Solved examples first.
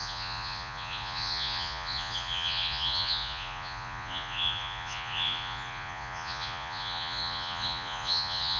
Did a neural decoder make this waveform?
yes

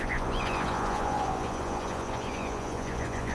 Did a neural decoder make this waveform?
yes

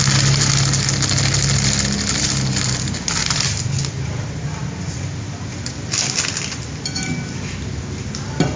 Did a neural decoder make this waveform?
no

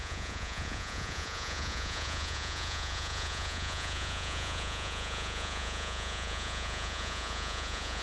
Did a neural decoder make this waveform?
yes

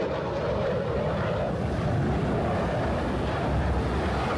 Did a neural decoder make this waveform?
no